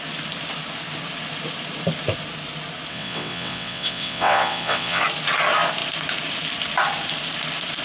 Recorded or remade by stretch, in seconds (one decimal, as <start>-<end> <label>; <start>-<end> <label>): 0.0-2.9 recorded; 2.9-5.0 remade; 5.0-7.8 recorded